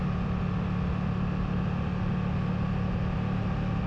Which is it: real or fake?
real